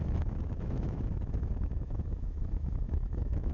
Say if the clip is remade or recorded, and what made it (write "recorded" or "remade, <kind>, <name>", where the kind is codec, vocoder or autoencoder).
remade, autoencoder, DAC-VAE